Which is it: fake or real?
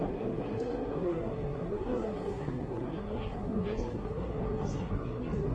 fake